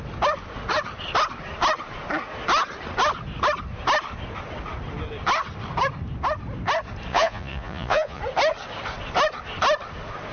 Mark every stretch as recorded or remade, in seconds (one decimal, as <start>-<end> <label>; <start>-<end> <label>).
0.0-7.1 recorded; 7.1-8.2 remade; 8.2-10.3 recorded